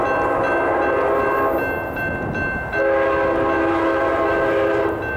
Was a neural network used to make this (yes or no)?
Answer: no